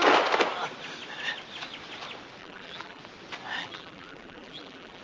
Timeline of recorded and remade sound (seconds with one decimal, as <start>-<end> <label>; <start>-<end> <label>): 0.0-2.4 recorded; 2.4-3.0 remade; 3.0-3.6 recorded; 3.6-5.0 remade